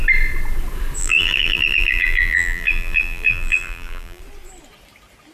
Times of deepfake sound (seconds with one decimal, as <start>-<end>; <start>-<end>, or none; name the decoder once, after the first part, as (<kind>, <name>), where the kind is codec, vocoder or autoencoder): 1.0-4.2 (vocoder, BigVGAN v2)